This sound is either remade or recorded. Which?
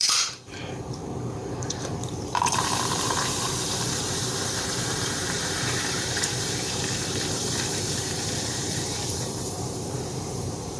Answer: remade